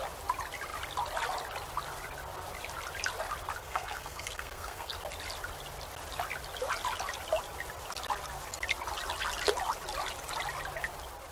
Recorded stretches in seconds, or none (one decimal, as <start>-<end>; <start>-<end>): 0.0-3.6; 4.9-11.3